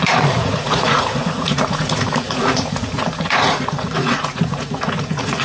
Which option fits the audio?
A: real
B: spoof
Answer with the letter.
B